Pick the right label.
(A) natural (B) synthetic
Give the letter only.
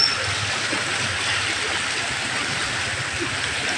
A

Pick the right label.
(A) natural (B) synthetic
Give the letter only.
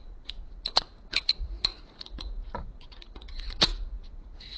B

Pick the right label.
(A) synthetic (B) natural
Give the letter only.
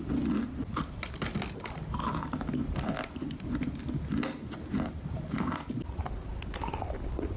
B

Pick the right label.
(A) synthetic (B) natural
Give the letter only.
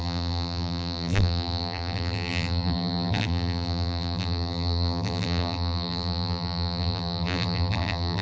A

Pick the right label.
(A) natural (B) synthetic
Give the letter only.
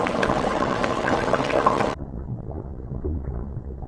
B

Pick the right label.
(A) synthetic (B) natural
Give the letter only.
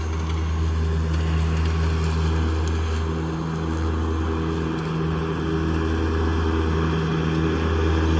B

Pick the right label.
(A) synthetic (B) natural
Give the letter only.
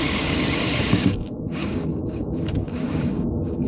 A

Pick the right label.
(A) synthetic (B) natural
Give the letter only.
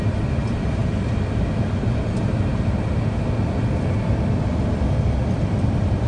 B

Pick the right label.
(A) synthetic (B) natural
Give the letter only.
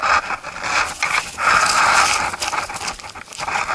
B